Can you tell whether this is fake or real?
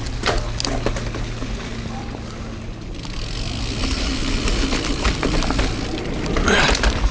real